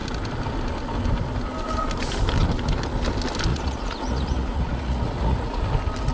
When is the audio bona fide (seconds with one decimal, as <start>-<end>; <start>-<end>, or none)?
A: 0.0-3.5; 5.6-6.1